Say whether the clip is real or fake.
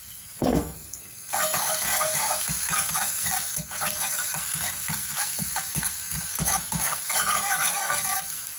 fake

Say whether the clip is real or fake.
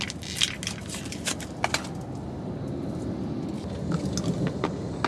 real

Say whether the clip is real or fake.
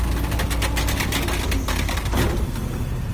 real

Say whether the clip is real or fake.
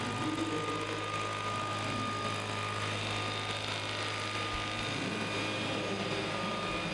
real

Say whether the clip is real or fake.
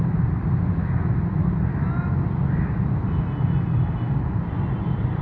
real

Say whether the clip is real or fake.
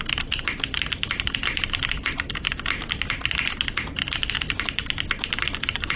real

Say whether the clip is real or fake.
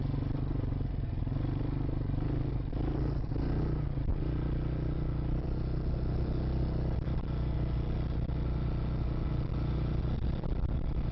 real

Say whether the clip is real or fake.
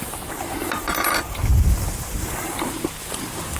fake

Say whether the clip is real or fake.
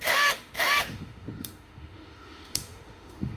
fake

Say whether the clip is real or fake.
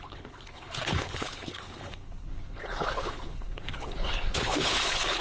fake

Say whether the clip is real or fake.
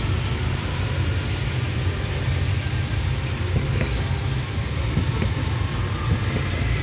real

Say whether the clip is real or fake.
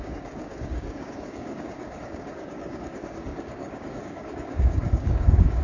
fake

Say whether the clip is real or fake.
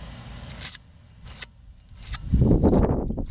real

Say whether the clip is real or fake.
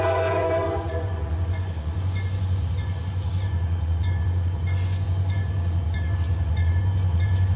fake